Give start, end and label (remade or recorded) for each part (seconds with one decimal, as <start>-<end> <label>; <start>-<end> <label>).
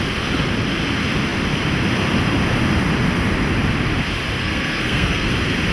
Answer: 0.0-4.4 recorded; 4.4-5.3 remade; 5.3-5.7 recorded